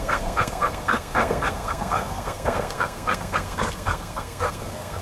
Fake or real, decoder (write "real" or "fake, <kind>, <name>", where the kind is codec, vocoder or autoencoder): fake, codec, SNAC